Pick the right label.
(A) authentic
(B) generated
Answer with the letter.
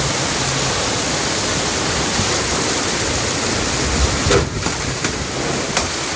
A